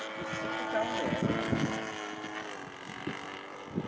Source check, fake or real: real